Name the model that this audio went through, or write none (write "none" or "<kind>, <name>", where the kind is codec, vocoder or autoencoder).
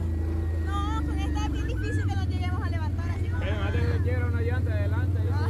none